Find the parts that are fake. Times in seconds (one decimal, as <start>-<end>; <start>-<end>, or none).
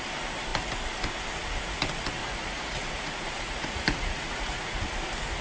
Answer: 2.2-4.8